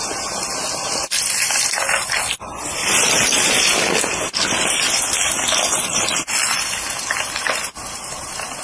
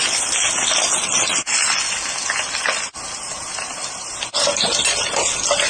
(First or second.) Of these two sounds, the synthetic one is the first